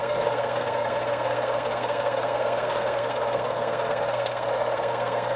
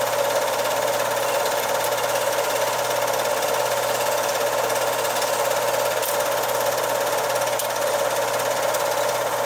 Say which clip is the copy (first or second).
first